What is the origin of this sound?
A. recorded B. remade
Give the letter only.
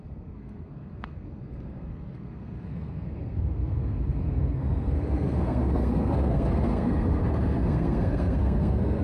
B